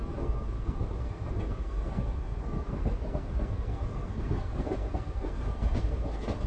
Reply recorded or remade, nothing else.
remade